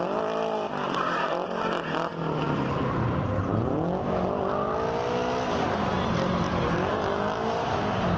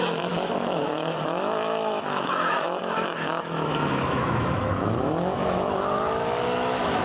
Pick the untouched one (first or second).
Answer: first